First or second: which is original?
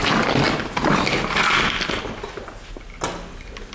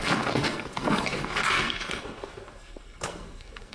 first